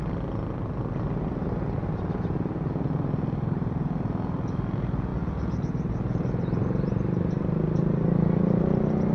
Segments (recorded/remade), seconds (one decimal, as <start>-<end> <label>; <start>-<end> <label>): 0.0-9.1 recorded